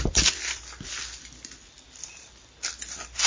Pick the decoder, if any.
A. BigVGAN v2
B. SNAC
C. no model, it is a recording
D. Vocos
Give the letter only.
A